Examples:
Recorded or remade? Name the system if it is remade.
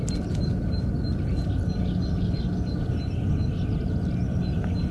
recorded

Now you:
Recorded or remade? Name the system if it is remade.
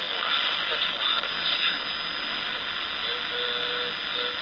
recorded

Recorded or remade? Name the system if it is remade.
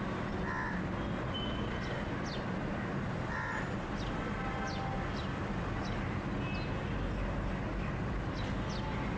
recorded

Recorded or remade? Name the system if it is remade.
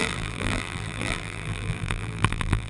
remade, vocoder, BigVGAN v2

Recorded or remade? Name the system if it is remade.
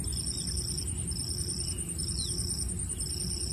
recorded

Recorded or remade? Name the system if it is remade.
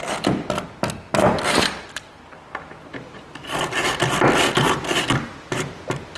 recorded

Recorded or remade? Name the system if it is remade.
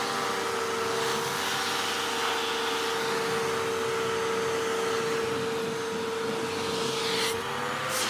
recorded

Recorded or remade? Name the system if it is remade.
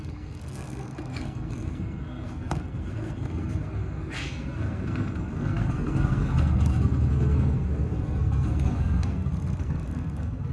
remade, codec, SNAC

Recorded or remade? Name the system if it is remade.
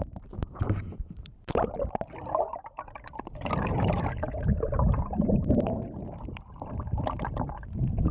remade, vocoder, BigVGAN v2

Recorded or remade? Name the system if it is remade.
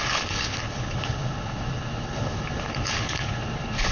remade, codec, HILCodec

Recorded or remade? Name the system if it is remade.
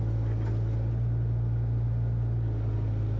recorded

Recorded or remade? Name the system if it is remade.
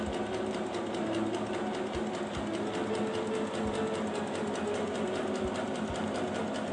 recorded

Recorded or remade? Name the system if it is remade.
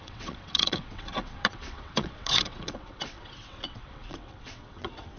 remade, vocoder, WaveNeXt